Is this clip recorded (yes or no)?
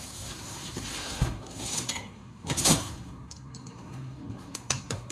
no